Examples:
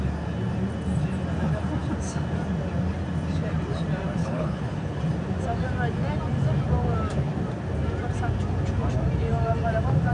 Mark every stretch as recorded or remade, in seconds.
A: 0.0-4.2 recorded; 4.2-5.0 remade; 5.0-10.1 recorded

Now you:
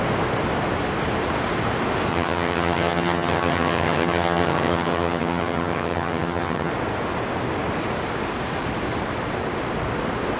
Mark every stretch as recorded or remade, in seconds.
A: 0.0-2.1 recorded; 2.1-6.7 remade; 6.7-10.4 recorded